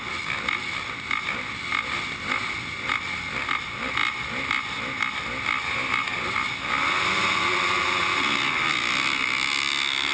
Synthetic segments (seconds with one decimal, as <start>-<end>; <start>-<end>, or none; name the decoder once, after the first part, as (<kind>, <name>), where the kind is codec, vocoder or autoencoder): none